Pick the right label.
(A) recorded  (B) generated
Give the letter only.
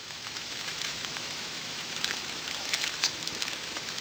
B